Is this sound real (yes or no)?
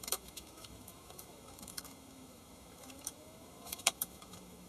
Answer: no